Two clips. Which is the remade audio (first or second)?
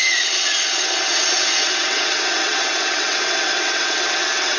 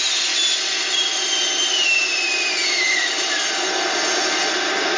first